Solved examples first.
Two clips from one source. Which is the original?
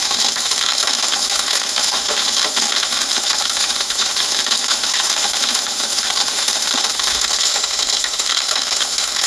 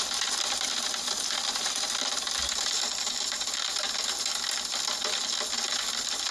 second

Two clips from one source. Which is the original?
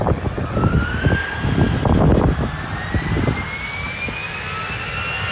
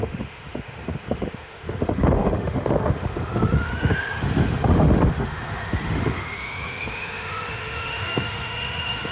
first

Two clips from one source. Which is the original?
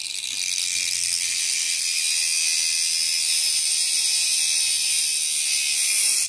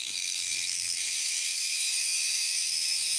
first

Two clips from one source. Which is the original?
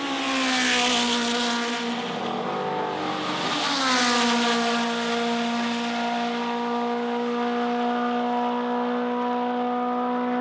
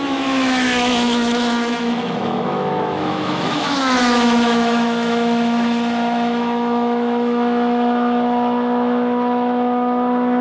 first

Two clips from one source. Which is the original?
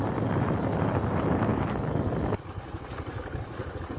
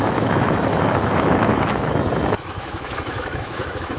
first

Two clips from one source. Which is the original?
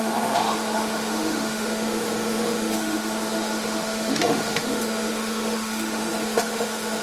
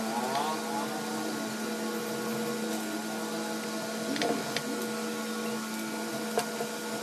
second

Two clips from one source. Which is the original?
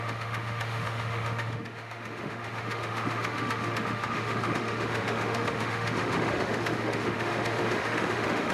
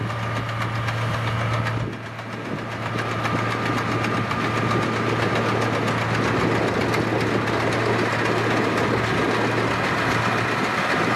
second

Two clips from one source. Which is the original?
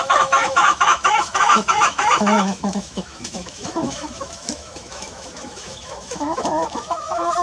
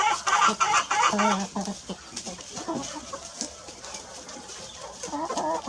second